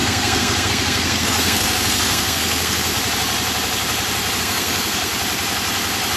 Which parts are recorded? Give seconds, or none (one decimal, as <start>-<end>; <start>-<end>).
2.9-4.4; 5.1-6.2